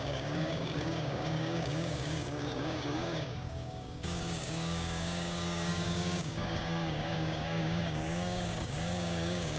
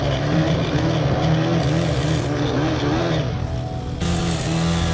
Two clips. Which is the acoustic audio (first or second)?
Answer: second